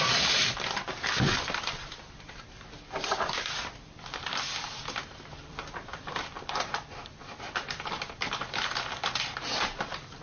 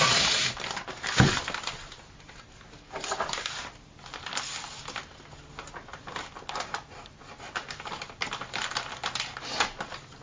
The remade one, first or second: first